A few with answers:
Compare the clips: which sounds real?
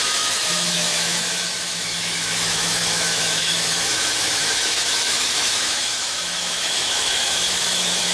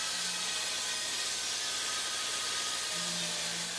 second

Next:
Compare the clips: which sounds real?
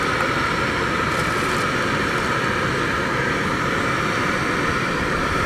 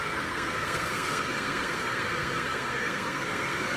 first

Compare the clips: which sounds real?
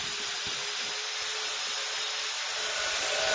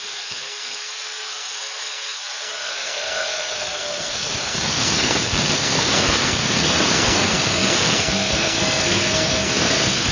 first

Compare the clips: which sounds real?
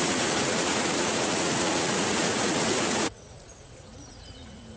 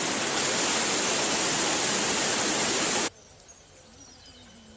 second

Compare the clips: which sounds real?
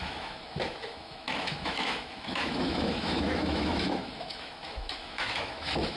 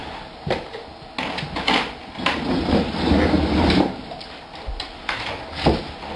second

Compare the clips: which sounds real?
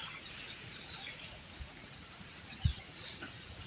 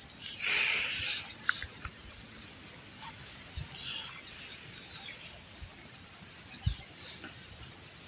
second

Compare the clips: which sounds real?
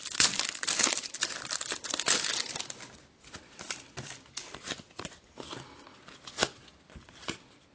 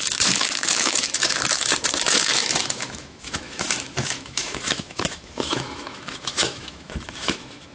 first